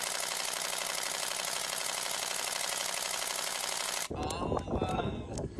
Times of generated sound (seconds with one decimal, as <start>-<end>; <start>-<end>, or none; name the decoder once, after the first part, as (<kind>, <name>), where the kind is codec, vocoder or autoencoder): 4.9-5.6 (codec, SNAC)